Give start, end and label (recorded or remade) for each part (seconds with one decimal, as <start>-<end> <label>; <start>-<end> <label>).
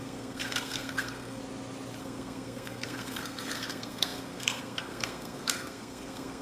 0.0-1.4 remade; 1.4-2.0 recorded; 2.0-6.4 remade